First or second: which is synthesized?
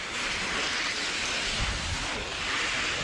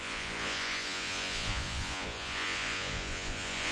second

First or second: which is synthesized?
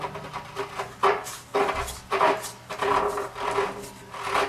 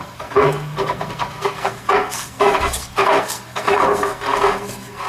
second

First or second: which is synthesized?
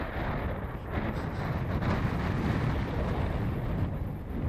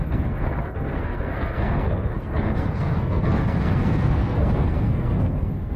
second